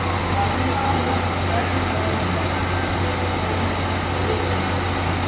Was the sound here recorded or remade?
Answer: recorded